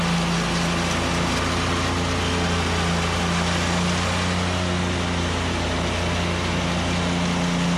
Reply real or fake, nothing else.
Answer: real